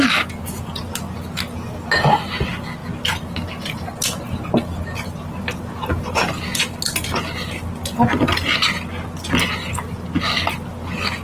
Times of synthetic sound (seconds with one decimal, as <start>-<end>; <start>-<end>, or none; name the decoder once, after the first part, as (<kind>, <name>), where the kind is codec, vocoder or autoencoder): none